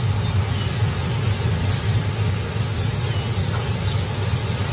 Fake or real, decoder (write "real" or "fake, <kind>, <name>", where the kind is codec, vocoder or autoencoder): real